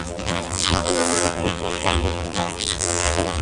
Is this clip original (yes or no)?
no